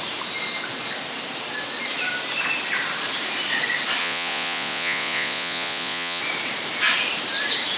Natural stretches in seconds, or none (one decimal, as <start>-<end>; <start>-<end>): 0.0-4.0; 6.2-7.8